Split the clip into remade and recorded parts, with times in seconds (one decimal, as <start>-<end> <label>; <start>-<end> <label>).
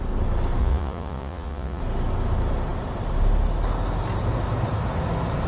0.0-0.6 recorded; 0.6-1.8 remade; 1.8-5.5 recorded